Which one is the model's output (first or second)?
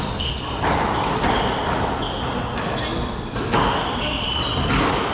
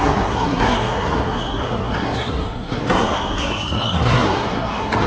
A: second